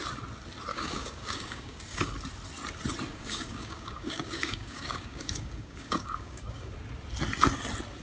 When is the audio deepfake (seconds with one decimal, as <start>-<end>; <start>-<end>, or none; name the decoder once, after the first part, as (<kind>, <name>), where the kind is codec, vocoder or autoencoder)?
0.7-2.1 (codec, DAC); 3.1-6.7